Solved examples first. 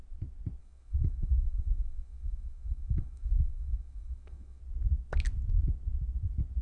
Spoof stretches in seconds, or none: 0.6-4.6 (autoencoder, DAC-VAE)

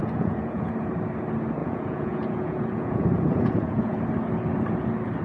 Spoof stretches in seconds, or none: 0.0-0.7 (vocoder, Vocos); 1.6-4.0

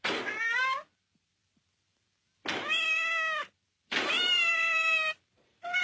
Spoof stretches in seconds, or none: 3.4-5.8 (vocoder, BigVGAN v2)

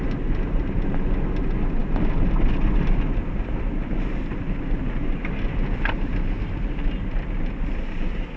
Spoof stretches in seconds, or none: none

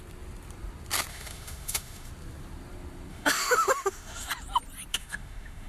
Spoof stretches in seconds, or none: 1.1-2.1 (autoencoder, DAC-VAE); 3.1-4.3; 4.9-5.7

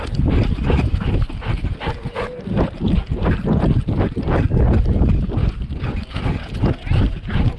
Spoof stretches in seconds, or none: none

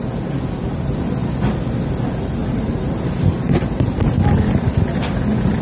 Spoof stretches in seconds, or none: 2.4-4.1 (vocoder, BigVGAN v2)

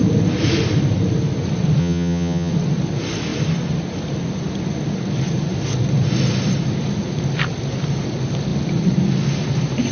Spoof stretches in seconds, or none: 1.8-2.5 (vocoder, HiFi-GAN)